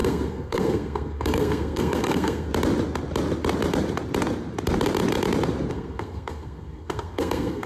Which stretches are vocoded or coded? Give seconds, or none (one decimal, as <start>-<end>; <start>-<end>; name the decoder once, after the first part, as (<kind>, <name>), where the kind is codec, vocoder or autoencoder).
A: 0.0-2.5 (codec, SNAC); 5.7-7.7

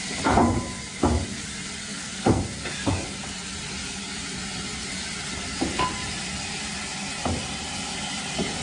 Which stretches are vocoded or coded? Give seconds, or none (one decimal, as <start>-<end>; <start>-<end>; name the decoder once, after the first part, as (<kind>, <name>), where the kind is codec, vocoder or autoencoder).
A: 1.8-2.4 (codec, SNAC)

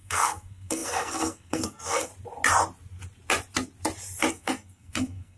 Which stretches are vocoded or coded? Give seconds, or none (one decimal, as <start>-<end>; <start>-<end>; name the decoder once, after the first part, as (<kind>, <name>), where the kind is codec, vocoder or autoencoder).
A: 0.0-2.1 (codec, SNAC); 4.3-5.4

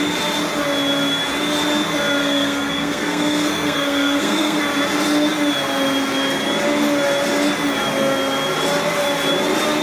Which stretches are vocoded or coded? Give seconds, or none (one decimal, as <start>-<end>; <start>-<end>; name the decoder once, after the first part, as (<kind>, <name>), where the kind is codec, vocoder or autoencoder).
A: 2.2-4.6 (codec, SNAC)

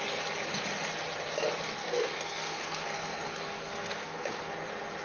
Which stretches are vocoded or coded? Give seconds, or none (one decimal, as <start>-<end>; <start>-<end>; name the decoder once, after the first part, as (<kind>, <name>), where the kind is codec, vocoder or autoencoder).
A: 1.8-4.5 (codec, SNAC)

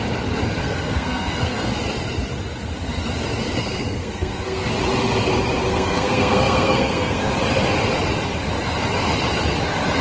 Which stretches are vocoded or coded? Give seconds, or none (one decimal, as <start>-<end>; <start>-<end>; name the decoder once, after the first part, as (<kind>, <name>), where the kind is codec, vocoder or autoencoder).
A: 0.6-1.7 (codec, SNAC); 3.6-4.7; 5.7-7.3